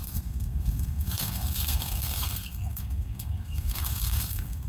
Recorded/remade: remade